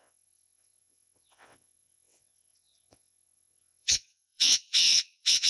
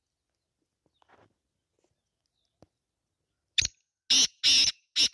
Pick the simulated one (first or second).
first